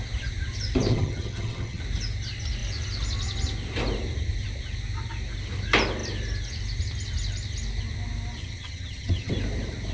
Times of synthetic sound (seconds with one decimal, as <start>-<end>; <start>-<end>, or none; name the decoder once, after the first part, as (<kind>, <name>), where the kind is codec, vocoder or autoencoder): 0.9-1.8 (vocoder, HiFi-GAN); 8.4-9.3